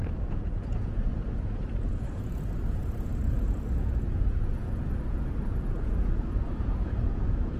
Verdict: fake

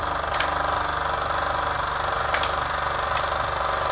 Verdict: real